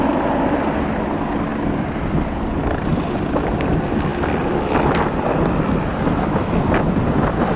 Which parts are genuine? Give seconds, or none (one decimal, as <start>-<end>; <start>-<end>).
0.0-7.6